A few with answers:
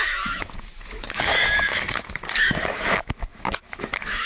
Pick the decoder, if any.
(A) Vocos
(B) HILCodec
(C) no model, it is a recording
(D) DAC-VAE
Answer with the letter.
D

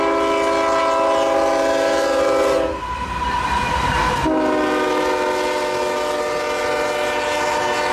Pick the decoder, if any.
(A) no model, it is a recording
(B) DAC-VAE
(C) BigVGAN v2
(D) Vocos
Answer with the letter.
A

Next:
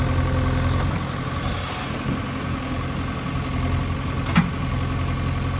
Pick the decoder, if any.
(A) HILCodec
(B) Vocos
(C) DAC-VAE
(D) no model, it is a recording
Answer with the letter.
D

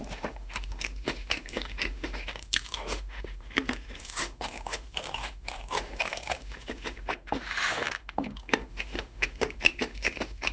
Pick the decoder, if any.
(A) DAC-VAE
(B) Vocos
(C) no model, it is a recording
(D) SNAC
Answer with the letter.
A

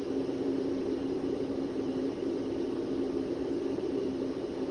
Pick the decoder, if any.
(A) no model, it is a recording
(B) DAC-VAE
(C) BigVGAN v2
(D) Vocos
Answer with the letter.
A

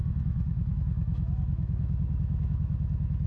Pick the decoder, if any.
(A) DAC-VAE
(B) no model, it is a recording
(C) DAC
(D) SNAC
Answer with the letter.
A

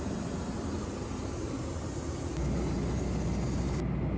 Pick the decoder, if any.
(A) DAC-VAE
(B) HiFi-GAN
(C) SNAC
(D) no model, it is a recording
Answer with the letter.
D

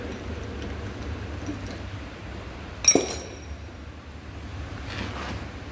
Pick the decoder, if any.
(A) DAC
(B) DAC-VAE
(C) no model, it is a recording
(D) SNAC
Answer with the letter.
C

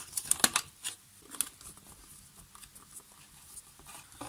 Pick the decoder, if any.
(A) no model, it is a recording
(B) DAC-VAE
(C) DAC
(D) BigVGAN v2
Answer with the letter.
A